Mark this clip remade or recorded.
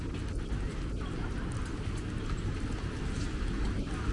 recorded